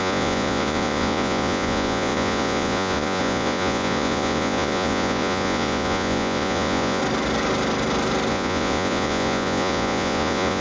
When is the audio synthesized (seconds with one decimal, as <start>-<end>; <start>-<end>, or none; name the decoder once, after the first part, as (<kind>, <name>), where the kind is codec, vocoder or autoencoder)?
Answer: 0.0-7.0 (vocoder, Vocos); 8.3-10.6

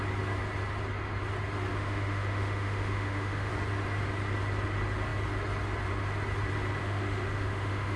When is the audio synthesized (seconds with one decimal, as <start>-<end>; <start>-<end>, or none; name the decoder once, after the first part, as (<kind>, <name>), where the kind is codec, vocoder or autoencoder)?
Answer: 1.7-3.5 (autoencoder, DAC-VAE); 6.8-8.0

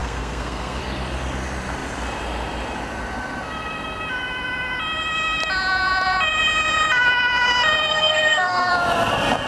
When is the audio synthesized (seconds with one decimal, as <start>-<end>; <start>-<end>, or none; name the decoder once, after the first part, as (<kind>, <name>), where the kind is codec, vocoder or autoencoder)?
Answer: 0.0-0.8 (codec, SNAC); 7.9-8.7

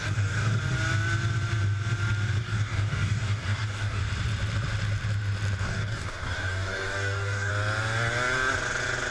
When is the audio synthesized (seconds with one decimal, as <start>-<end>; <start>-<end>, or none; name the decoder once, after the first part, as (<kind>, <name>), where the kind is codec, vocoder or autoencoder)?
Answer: 0.0-0.6 (codec, DAC); 2.4-4.0; 5.6-7.5

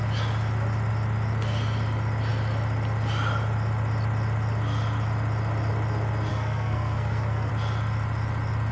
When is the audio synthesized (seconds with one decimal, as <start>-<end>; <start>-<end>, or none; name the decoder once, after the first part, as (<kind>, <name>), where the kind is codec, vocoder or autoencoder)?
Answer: 6.3-7.5 (codec, SNAC)

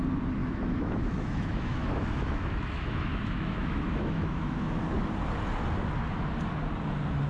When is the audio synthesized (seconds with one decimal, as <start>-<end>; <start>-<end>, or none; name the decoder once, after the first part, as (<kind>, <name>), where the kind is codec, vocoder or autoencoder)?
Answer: 0.4-4.8 (autoencoder, DAC-VAE)

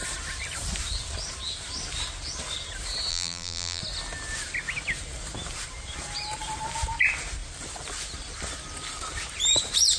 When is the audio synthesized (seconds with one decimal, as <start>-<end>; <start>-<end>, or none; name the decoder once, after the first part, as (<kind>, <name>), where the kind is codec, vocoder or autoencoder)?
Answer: 3.1-3.8 (vocoder, BigVGAN v2)